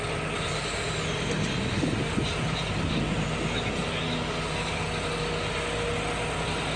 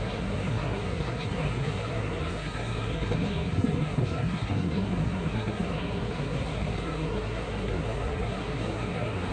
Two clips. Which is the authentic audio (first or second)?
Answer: first